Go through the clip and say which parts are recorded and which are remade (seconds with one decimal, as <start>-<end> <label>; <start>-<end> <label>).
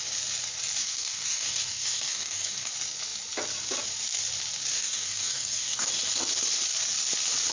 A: 0.0-0.8 recorded; 0.8-2.7 remade; 2.7-4.7 recorded; 4.7-5.9 remade; 5.9-7.5 recorded